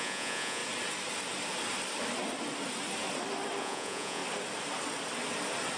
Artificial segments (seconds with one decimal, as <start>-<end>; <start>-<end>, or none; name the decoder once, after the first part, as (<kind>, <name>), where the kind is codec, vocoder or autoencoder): 0.0-0.6 (vocoder, Vocos); 3.6-4.2